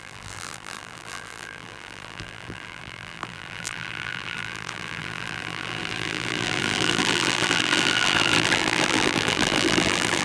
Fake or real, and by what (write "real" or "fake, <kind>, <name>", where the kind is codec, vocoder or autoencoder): fake, vocoder, BigVGAN v2